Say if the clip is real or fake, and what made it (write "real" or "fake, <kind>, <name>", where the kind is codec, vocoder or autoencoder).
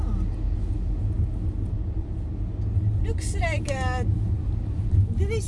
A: real